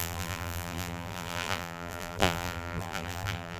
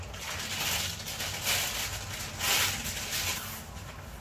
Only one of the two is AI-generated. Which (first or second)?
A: first